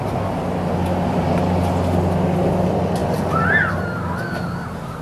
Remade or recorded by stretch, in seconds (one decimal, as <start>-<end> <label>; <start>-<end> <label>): 0.0-5.0 recorded

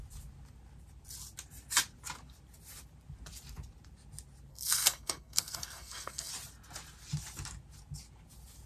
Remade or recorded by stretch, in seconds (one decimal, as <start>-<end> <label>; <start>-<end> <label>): 0.0-4.5 recorded; 4.5-6.3 remade; 6.3-8.7 recorded